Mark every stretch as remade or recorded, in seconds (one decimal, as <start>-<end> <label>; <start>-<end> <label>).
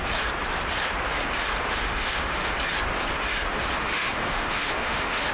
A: 0.0-1.8 recorded; 1.8-2.5 remade; 2.5-3.8 recorded; 3.8-5.3 remade